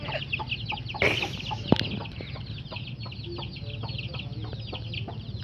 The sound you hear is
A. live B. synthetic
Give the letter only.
A